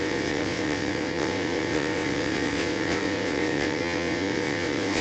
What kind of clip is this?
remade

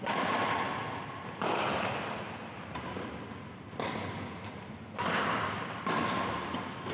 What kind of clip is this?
recorded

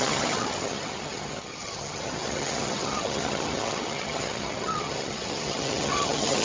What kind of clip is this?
remade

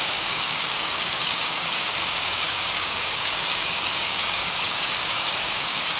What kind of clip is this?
remade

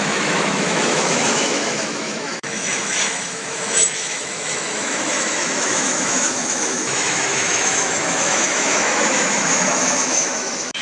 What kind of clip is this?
remade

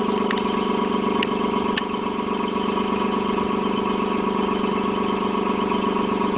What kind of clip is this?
recorded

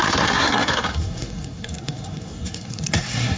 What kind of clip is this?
remade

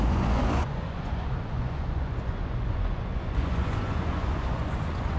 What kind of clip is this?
remade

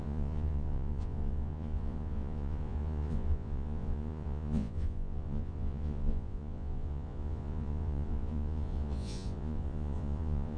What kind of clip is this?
remade